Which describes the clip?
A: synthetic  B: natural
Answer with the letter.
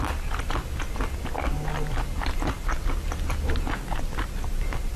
B